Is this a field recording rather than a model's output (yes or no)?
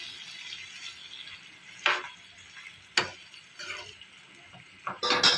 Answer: yes